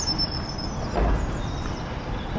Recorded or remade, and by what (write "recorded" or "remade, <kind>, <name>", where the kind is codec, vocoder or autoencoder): recorded